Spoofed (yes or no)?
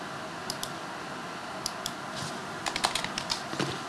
no